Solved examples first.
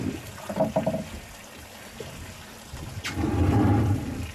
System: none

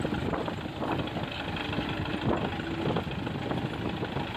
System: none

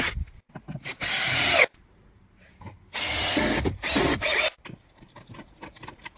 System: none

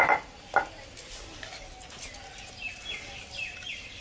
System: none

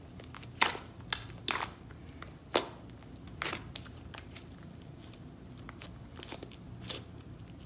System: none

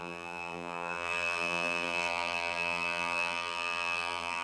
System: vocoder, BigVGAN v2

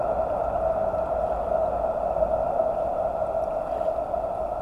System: none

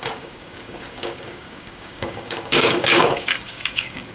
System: codec, DAC